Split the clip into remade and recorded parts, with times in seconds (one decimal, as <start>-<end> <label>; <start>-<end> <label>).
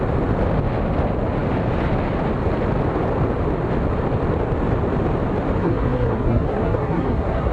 0.0-5.6 recorded; 5.6-7.5 remade